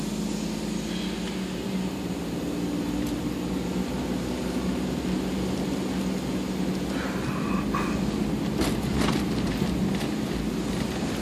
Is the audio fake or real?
real